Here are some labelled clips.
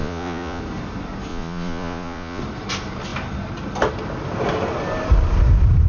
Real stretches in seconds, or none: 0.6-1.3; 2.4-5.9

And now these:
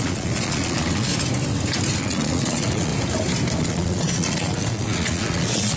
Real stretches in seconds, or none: 1.1-2.0; 2.9-3.6

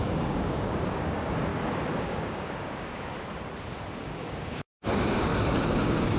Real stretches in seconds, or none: 1.5-2.0; 3.1-3.9; 5.3-5.8

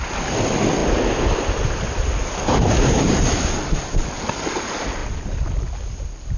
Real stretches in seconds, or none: 0.0-6.4